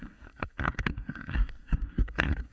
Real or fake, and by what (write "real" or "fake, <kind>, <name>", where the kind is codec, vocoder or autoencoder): fake, codec, SNAC